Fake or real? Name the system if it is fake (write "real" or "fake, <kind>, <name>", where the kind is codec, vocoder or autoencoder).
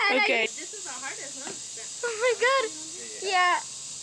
real